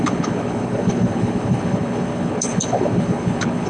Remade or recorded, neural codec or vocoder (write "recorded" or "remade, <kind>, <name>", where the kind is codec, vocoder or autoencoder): remade, codec, HILCodec